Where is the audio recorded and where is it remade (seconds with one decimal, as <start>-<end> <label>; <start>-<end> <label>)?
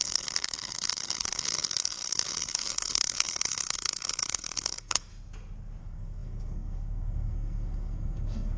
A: 0.0-5.1 remade; 5.1-5.8 recorded; 5.8-8.6 remade